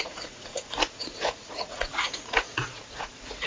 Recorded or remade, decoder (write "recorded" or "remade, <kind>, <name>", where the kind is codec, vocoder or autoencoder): remade, vocoder, Vocos